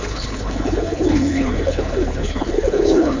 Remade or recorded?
remade